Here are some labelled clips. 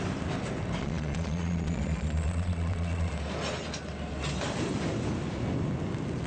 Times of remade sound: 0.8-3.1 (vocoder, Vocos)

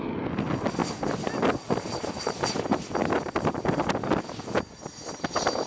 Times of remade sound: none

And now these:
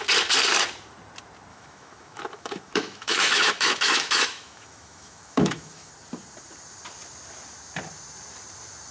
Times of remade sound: 1.5-5.9 (autoencoder, DAC-VAE)